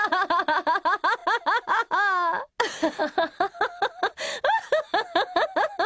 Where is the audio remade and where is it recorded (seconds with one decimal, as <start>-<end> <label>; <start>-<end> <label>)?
0.0-5.9 recorded